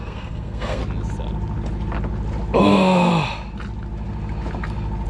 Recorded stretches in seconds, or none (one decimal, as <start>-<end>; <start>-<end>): 0.8-2.6; 3.1-5.1